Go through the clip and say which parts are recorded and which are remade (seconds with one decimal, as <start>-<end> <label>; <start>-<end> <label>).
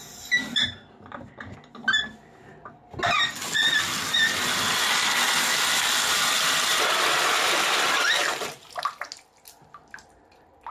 0.0-7.3 recorded; 7.3-8.8 remade; 8.8-10.7 recorded